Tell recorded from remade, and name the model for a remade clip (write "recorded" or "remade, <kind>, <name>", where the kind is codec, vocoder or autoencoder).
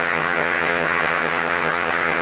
remade, vocoder, HiFi-GAN